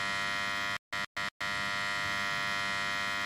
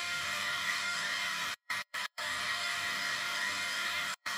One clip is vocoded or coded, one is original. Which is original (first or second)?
first